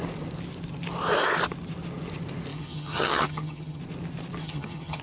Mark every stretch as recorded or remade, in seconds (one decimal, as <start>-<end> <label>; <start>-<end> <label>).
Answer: 0.0-2.5 recorded; 2.5-3.8 remade; 3.8-4.4 recorded; 4.4-5.0 remade